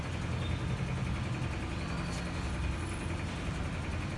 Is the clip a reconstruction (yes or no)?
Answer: no